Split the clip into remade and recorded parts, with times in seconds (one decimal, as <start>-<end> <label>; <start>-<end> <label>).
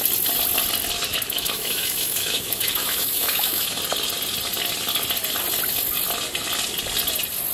0.0-1.1 recorded; 1.1-3.8 remade; 3.8-7.5 recorded